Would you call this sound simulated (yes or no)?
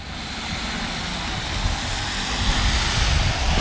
no